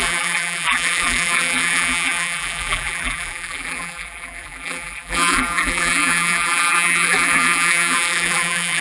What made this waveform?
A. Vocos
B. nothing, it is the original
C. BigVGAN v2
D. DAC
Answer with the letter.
C